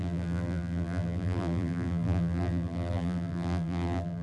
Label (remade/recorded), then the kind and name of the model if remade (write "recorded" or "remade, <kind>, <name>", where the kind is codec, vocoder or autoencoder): remade, vocoder, BigVGAN v2